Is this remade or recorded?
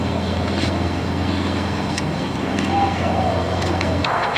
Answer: remade